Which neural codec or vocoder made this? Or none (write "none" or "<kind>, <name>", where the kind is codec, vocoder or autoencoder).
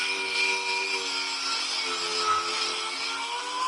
none